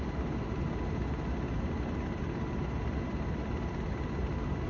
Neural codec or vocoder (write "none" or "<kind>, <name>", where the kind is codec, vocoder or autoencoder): none